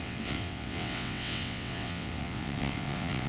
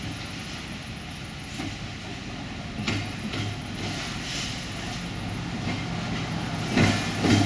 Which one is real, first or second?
second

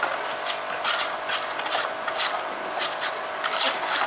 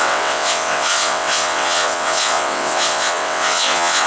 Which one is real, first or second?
first